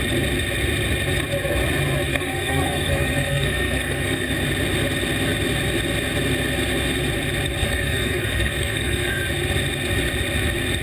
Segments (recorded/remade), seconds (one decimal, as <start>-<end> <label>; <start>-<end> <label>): 0.0-2.1 recorded; 2.1-4.3 remade; 4.3-7.6 recorded; 7.6-9.2 remade; 9.2-10.8 recorded